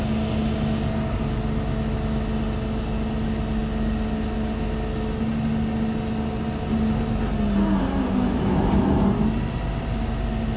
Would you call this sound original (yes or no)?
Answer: yes